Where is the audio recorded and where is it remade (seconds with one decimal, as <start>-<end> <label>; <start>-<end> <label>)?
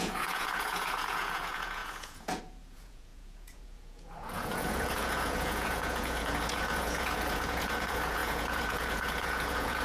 0.0-9.8 remade